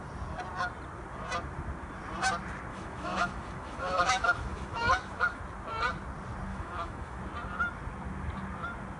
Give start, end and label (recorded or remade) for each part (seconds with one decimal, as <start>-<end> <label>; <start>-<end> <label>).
0.0-2.7 recorded; 2.7-5.4 remade; 5.4-6.5 recorded; 6.5-7.2 remade; 7.2-9.0 recorded